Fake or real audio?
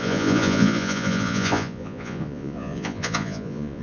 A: fake